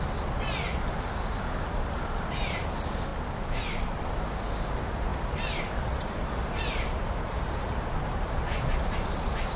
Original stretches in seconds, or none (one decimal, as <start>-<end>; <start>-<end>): 0.0-5.1; 8.6-9.6